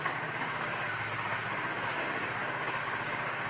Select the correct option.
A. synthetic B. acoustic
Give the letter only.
A